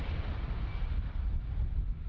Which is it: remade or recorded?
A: recorded